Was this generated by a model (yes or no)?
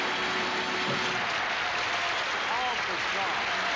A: no